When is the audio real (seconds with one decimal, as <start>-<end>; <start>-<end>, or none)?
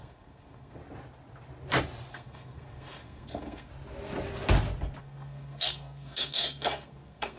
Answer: 0.8-2.1; 3.7-5.0